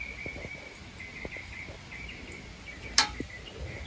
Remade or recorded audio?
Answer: recorded